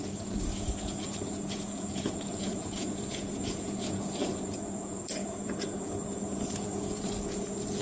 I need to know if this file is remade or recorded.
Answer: remade